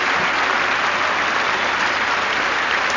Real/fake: real